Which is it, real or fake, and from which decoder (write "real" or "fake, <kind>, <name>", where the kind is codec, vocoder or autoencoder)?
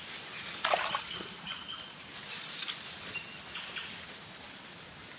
real